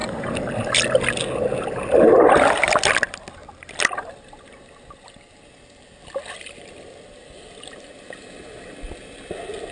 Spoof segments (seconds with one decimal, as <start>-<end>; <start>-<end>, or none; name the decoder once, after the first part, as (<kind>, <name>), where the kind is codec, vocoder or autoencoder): none